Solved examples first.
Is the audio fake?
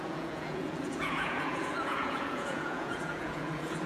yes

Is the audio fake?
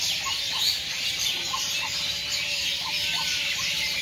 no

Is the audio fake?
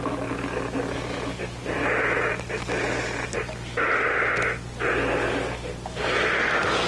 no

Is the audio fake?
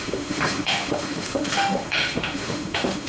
yes